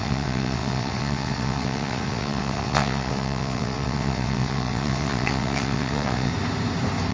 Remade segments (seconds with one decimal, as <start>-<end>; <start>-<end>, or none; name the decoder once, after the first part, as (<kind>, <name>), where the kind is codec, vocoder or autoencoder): 0.0-6.3 (vocoder, WaveNeXt)